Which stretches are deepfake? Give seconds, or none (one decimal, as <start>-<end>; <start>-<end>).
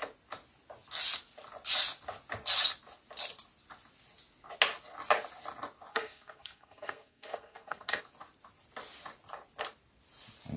5.9-8.0